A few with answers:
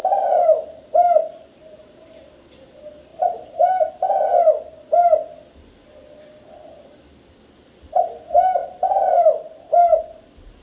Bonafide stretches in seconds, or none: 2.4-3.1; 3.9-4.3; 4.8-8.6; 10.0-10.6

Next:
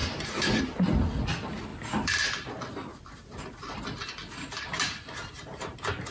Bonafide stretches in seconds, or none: 0.6-2.9; 3.8-6.1

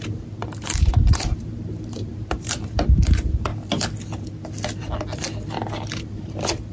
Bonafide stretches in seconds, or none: 3.5-6.0

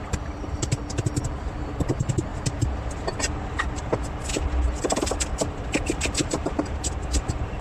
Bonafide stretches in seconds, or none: 0.0-7.6

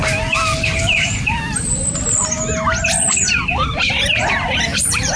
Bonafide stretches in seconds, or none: 1.9-3.8

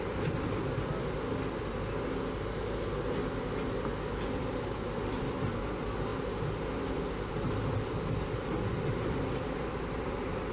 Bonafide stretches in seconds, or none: 0.0-6.1

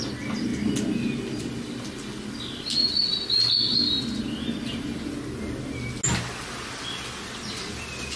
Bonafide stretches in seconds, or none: 0.0-8.2

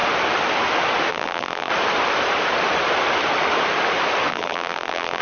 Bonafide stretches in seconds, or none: 0.0-1.1; 1.7-4.3